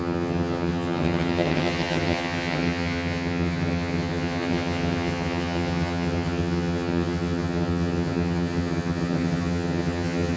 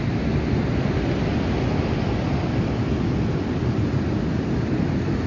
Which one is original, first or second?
second